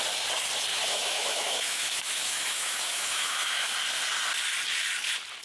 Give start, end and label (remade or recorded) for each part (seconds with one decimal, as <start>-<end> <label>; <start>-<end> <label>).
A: 0.0-0.7 recorded; 0.7-3.7 remade; 3.7-5.4 recorded

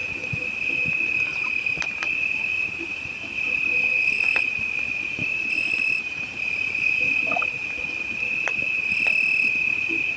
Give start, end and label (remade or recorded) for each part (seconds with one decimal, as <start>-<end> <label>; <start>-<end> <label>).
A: 0.0-0.7 remade; 0.7-1.4 recorded; 1.4-3.3 remade; 3.3-3.9 recorded; 3.9-7.0 remade; 7.0-10.2 recorded

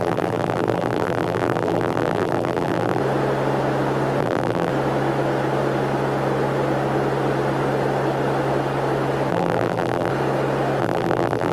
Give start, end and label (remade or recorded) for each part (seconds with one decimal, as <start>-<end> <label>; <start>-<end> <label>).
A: 0.0-3.0 remade; 3.0-4.2 recorded; 4.2-4.7 remade; 4.7-9.3 recorded; 9.3-10.1 remade; 10.1-10.8 recorded; 10.8-11.5 remade

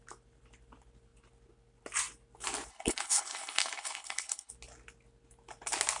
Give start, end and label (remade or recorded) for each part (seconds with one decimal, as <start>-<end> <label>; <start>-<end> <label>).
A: 0.0-2.7 recorded; 2.7-4.5 remade; 4.5-6.0 recorded

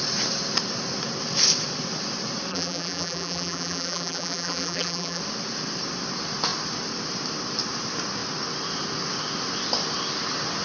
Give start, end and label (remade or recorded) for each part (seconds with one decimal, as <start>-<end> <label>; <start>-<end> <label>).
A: 0.0-2.5 recorded; 2.5-5.2 remade; 5.2-10.6 recorded

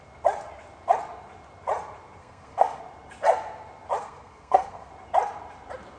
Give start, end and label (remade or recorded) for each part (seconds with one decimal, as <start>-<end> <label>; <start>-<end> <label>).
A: 0.0-2.2 recorded; 2.2-2.8 remade; 2.8-4.0 recorded; 4.0-4.9 remade; 4.9-6.0 recorded

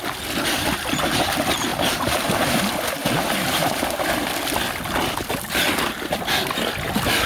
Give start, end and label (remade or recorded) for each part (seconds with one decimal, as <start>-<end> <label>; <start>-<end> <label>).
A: 0.0-1.7 recorded; 1.7-2.6 remade; 2.6-3.0 recorded; 3.0-4.2 remade; 4.2-7.3 recorded